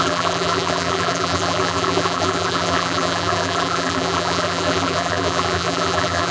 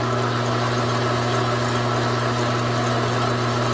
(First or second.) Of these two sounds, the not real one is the first